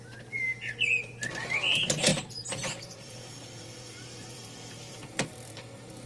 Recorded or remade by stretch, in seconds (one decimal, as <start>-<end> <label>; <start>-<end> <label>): 0.0-2.1 recorded; 2.1-6.1 remade